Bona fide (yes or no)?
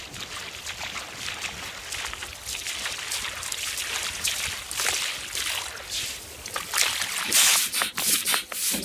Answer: yes